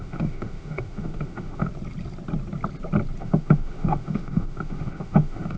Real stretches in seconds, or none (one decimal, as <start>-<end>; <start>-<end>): 1.7-3.2